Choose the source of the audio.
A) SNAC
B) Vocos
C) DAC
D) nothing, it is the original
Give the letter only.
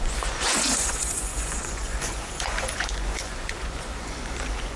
B